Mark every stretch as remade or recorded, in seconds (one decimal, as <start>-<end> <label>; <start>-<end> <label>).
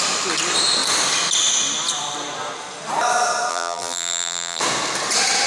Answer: 0.0-3.5 recorded; 3.5-4.6 remade; 4.6-5.5 recorded